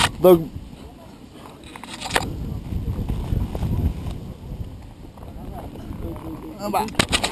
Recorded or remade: recorded